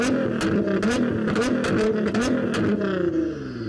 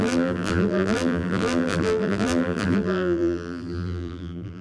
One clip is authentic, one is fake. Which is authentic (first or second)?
first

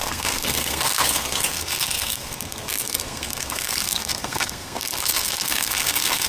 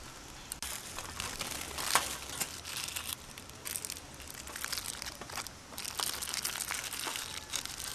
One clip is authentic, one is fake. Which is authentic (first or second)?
second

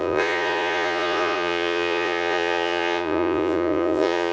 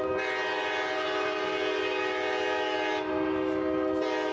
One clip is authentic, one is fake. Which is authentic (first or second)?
second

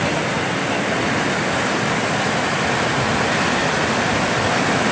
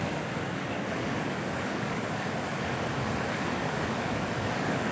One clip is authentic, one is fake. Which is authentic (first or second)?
first